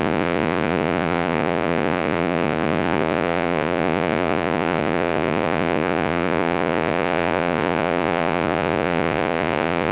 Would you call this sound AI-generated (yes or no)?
yes